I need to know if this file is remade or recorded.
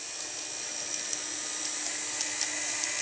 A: recorded